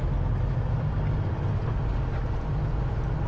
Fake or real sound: real